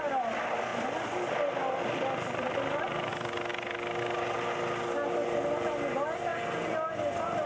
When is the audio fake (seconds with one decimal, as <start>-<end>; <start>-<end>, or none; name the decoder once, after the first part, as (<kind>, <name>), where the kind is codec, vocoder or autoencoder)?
none